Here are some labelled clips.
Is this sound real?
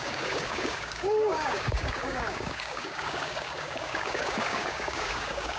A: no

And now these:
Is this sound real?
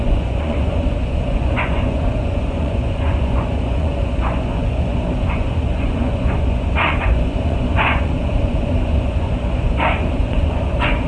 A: no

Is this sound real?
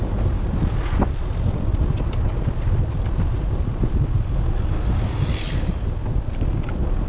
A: yes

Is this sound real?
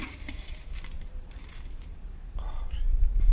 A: no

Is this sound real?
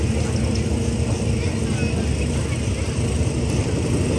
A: yes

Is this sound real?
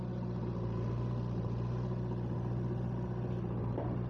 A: yes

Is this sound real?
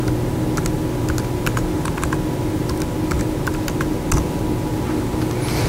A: yes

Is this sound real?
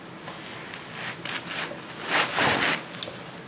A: yes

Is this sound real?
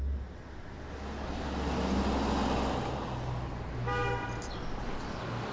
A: yes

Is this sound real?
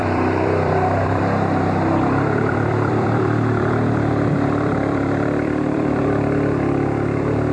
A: no